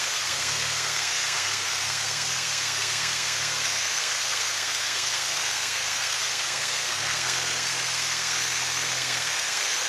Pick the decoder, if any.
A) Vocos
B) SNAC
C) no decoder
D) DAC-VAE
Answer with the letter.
B